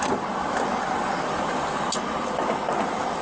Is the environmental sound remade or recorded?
recorded